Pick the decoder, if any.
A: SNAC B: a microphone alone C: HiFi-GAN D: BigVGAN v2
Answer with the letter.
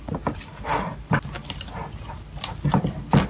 B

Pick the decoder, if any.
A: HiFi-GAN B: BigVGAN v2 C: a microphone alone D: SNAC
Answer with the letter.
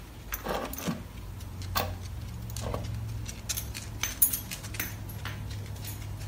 C